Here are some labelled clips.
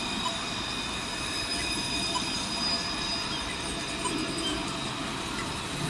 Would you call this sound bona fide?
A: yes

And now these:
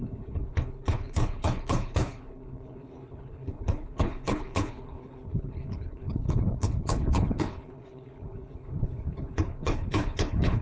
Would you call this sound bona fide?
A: no